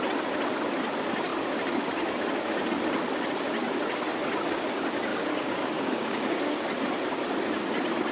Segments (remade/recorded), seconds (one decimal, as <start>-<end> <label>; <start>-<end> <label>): 0.0-5.1 recorded; 5.1-6.7 remade; 6.7-8.1 recorded